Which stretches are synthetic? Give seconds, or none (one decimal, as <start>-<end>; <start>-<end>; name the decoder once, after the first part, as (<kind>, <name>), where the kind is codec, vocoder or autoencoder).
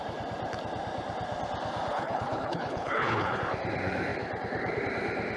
1.9-3.4 (codec, HILCodec)